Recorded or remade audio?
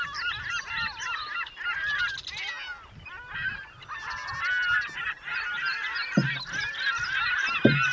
recorded